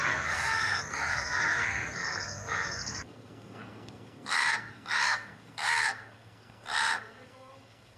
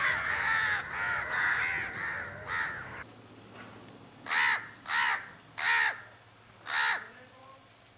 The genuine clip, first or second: second